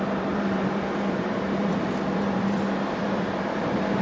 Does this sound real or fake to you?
fake